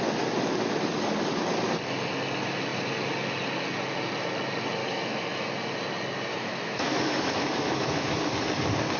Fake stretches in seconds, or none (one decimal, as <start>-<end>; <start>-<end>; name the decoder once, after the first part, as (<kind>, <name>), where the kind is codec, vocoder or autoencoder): 4.8-5.5 (autoencoder, DAC-VAE); 6.3-8.3